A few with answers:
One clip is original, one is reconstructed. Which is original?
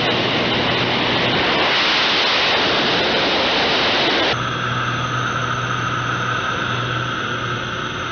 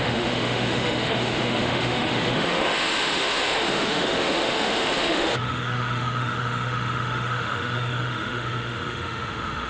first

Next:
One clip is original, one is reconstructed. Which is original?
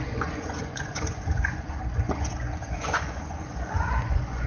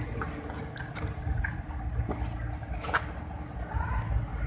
second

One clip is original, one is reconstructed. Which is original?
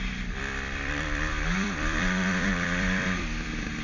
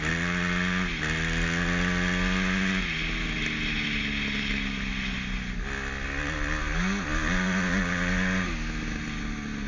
second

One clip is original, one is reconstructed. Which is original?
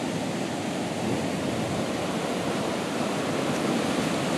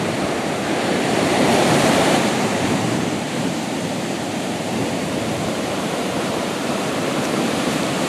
first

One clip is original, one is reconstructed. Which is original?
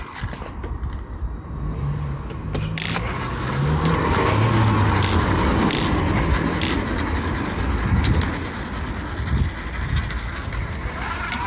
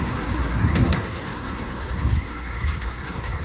first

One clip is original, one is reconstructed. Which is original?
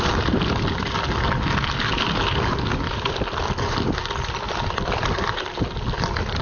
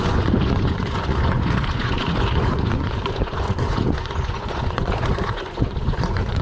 first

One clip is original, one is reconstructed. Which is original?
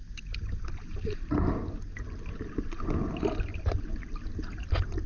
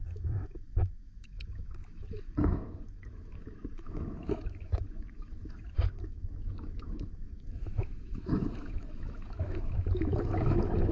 first